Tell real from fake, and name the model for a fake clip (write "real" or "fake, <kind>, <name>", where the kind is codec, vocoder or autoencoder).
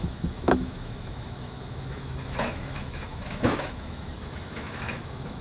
fake, autoencoder, DAC-VAE